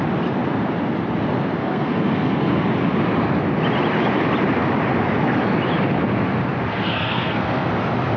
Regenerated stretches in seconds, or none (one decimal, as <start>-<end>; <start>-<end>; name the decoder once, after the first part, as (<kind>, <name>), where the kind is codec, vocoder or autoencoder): 1.6-2.6 (codec, SNAC); 6.7-7.7